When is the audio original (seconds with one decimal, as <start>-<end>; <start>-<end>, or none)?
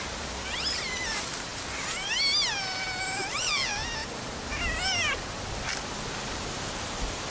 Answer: 0.0-7.3